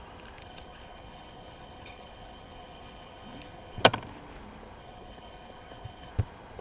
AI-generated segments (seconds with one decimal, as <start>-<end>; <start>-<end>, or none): 0.4-3.8; 4.8-6.1